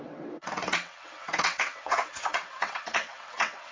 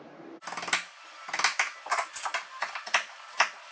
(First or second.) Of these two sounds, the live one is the second